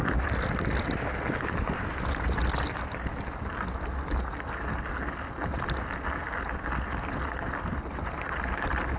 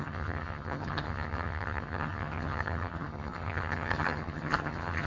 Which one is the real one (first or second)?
first